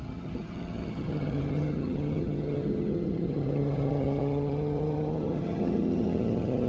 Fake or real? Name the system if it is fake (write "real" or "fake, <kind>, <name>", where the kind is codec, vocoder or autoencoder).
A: fake, vocoder, HiFi-GAN